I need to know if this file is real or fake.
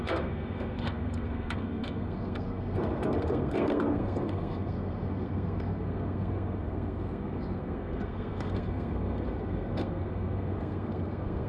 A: fake